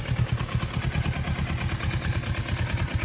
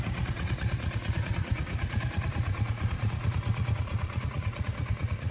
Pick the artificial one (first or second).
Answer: second